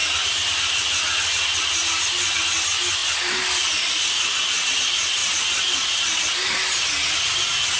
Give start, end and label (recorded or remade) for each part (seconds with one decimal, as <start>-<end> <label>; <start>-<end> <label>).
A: 0.0-0.8 remade; 0.8-3.0 recorded; 3.0-4.0 remade; 4.0-7.8 recorded